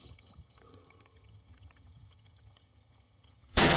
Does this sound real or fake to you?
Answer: fake